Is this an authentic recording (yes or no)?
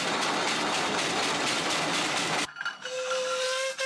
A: yes